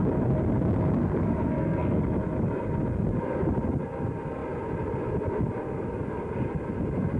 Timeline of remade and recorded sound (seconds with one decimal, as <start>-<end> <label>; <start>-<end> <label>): 0.0-1.0 recorded; 1.0-2.0 remade; 2.0-7.2 recorded